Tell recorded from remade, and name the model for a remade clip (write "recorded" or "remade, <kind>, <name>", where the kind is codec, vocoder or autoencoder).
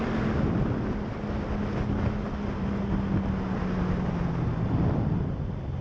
recorded